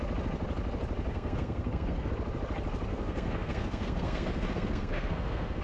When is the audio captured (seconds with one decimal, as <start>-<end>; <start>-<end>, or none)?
0.0-1.1; 2.1-2.9